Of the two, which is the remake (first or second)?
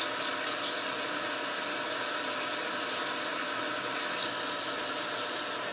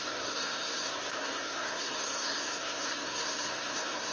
second